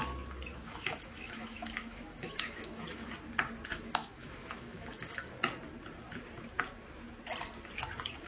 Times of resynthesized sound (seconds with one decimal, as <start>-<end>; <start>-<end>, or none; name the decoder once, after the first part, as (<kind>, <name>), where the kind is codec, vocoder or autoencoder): 0.5-3.1 (autoencoder, DAC-VAE); 3.7-5.3